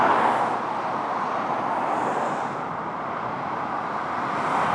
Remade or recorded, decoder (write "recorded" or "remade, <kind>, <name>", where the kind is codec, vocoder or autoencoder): recorded